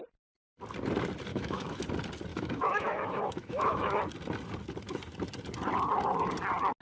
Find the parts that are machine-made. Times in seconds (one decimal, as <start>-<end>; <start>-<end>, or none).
1.3-1.8; 2.3-4.0